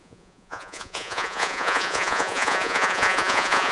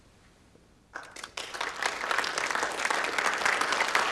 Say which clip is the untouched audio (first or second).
second